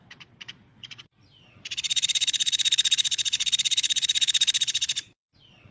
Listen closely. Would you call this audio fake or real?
fake